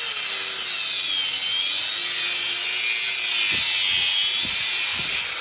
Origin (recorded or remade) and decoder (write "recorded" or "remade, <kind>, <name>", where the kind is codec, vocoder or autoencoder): recorded